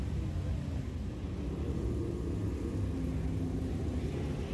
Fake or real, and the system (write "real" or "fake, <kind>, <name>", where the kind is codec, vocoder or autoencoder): real